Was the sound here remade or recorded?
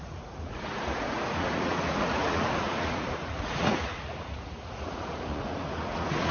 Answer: remade